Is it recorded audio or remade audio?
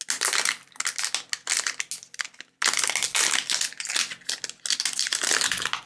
recorded